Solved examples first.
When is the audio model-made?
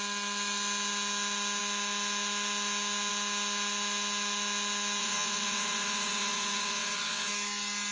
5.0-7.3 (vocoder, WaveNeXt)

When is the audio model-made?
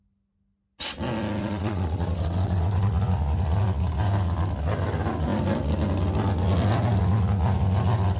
1.4-2.9 (vocoder, WaveNeXt)